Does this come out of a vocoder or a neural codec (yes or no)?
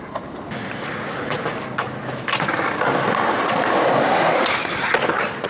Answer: no